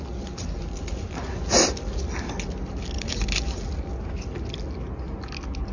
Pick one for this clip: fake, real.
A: real